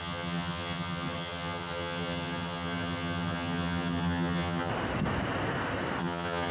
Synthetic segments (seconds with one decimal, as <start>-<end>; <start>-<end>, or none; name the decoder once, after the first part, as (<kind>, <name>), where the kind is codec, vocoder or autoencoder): 0.0-4.7 (vocoder, HiFi-GAN); 6.0-6.5